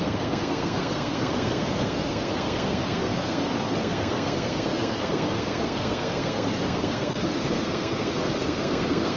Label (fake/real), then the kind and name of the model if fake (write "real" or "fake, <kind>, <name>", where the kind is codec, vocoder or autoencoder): fake, codec, SNAC